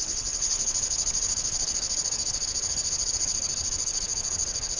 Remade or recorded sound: remade